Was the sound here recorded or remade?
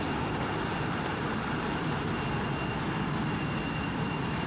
remade